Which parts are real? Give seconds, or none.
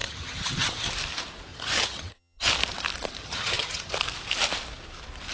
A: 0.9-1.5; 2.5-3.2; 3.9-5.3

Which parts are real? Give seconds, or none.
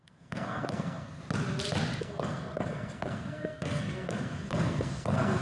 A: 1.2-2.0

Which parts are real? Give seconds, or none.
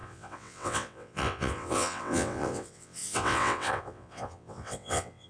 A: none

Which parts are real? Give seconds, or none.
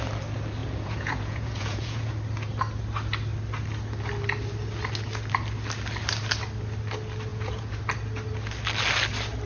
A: 0.0-0.6; 2.1-7.3; 7.8-9.5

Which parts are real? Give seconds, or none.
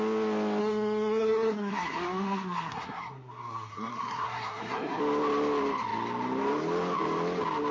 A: 0.0-0.6; 5.0-7.7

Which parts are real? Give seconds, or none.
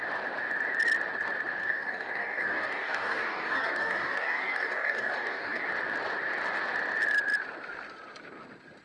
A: 0.0-1.6; 5.6-8.8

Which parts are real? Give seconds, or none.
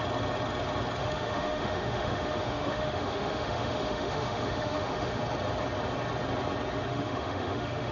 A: 0.0-1.0; 5.2-6.9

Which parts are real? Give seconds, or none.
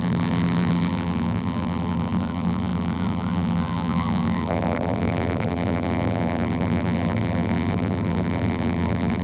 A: none